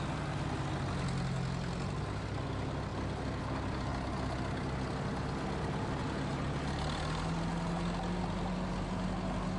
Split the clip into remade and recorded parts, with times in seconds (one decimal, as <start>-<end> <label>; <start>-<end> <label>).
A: 0.0-9.6 recorded

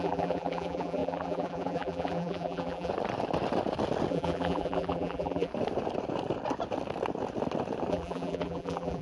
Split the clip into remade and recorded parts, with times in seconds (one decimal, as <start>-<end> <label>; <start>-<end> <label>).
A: 0.0-2.9 remade; 2.9-4.1 recorded; 4.1-5.5 remade; 5.5-7.9 recorded; 7.9-9.0 remade

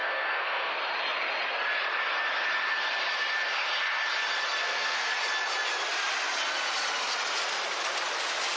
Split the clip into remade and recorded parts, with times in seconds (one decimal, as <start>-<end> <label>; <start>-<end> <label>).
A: 0.0-0.7 remade; 0.7-4.6 recorded; 4.6-5.1 remade; 5.1-8.6 recorded

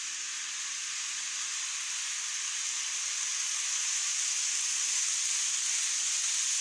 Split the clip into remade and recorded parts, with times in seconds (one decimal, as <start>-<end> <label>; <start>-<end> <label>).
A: 0.0-6.6 recorded